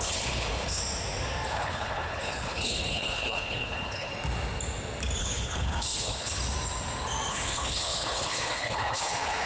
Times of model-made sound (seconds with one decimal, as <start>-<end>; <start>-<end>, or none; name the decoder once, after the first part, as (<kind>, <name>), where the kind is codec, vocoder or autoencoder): 0.0-0.8 (codec, HILCodec); 1.5-4.1; 5.2-6.4; 7.3-9.5